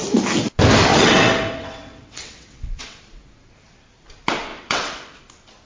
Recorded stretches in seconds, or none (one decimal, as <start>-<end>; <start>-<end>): 0.0-0.9; 3.0-4.5; 5.2-5.7